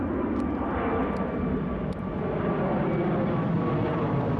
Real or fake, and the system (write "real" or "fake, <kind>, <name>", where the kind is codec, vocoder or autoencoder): real